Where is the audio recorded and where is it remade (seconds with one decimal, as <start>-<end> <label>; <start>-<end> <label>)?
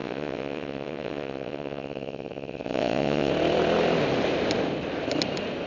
0.0-3.3 remade; 3.3-5.7 recorded